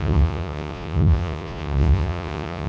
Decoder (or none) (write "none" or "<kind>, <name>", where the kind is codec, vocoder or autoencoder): vocoder, Vocos